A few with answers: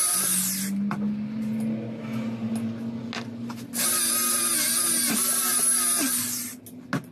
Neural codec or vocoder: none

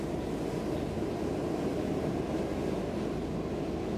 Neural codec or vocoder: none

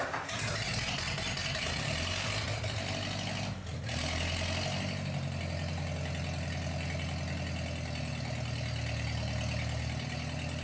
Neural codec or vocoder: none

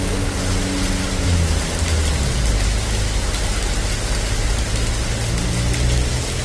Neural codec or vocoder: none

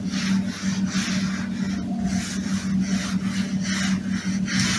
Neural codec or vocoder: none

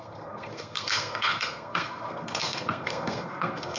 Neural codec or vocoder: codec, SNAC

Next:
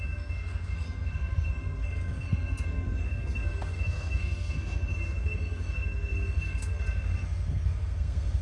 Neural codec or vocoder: codec, SNAC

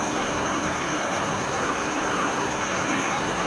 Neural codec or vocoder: codec, SNAC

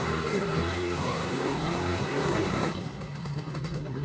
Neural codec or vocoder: codec, SNAC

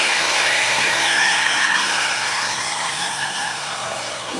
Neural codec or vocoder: codec, SNAC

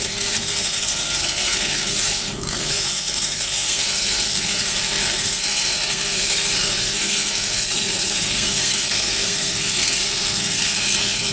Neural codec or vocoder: codec, SNAC